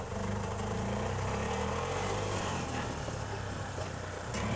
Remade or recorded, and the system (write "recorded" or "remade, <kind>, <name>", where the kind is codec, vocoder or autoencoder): recorded